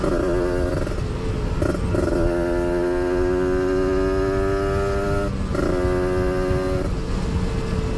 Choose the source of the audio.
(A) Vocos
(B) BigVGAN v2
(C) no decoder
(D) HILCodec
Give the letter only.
C